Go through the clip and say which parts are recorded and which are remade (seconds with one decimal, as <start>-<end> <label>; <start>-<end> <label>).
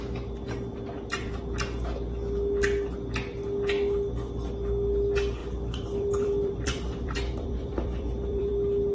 0.0-5.4 recorded; 5.4-8.5 remade; 8.5-8.9 recorded